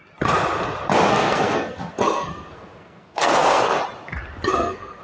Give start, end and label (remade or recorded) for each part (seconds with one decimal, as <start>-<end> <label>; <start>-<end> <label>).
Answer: 0.0-1.1 recorded; 1.1-3.8 remade; 3.8-4.5 recorded; 4.5-5.0 remade